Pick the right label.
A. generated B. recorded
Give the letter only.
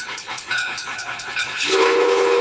A